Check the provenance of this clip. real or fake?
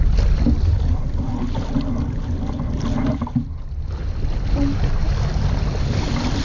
real